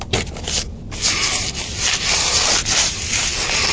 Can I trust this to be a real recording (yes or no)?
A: yes